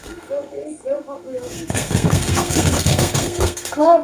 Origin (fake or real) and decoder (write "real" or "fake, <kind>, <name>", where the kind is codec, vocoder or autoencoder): fake, codec, SNAC